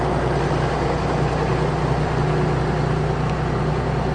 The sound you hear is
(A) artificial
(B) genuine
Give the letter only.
B